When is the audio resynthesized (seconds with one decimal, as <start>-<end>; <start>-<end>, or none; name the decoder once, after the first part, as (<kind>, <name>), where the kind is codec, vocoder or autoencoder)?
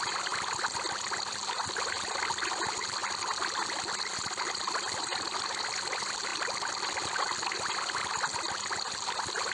none